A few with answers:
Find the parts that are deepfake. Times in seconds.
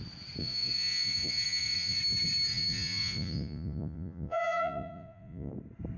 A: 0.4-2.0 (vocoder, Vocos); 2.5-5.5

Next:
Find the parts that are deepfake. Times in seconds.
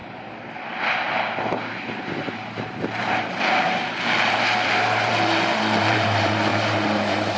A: 2.3-7.4 (vocoder, BigVGAN v2)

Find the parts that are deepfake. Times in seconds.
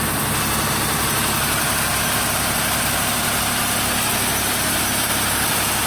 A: 0.7-1.9 (vocoder, BigVGAN v2); 4.8-5.9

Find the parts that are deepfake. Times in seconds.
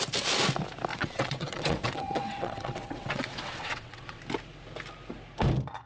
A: 0.9-4.2 (vocoder, WaveNeXt)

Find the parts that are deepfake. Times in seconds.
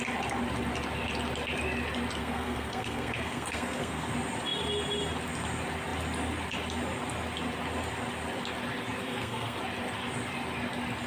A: 2.2-4.1 (codec, SNAC); 9.0-9.6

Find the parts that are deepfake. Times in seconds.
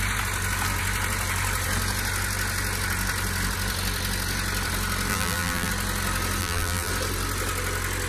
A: 5.1-5.7 (vocoder, BigVGAN v2); 6.4-6.9